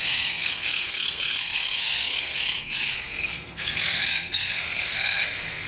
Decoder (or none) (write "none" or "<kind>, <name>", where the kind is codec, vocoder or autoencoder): codec, SNAC